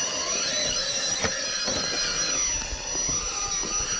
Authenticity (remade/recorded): recorded